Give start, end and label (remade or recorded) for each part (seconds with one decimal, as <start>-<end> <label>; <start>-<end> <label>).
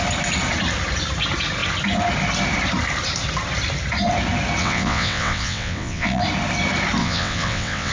0.0-4.6 recorded; 4.6-6.2 remade; 6.2-7.0 recorded; 7.0-7.9 remade